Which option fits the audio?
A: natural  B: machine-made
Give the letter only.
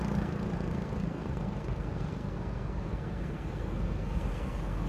B